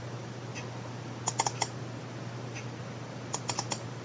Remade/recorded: recorded